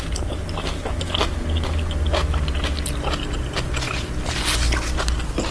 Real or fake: real